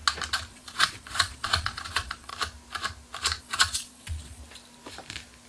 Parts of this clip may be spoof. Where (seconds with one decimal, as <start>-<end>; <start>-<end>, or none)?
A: 0.5-2.3; 3.4-4.4

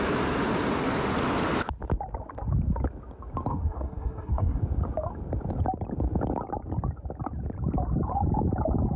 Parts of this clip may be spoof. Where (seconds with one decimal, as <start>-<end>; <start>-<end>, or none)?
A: 3.5-4.6

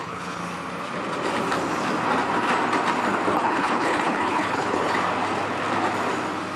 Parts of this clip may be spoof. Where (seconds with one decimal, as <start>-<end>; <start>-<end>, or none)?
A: 0.0-0.4; 3.3-4.9

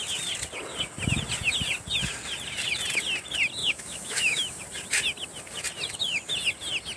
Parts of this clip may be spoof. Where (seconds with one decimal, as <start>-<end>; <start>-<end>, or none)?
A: 3.6-4.6

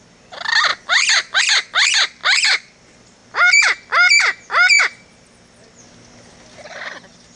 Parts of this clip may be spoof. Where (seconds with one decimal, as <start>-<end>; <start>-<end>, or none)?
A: 2.2-2.8

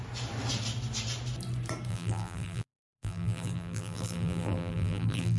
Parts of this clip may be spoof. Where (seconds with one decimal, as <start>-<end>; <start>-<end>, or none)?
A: 1.9-5.4

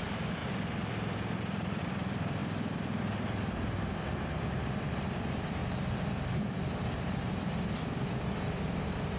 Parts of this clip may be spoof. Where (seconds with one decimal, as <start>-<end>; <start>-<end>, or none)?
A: 0.0-9.2

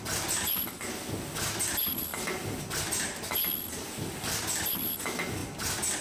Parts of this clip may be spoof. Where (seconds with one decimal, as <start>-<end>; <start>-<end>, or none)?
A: none